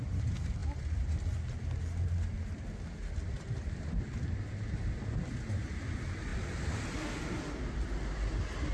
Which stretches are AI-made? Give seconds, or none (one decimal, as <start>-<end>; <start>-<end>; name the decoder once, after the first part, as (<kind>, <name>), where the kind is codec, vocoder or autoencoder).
none